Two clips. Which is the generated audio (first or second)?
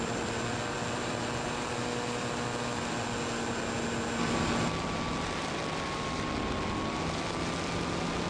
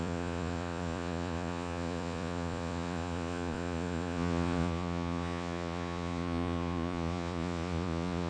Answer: second